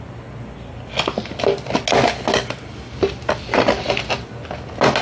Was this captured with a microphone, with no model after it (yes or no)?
yes